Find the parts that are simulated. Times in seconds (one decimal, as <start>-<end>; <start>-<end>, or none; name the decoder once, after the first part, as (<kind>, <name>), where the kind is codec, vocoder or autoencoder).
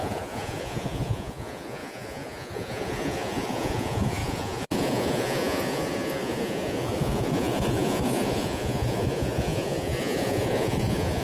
0.0-11.2 (vocoder, Vocos)